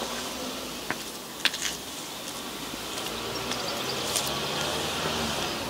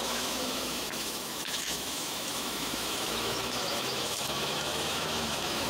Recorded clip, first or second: first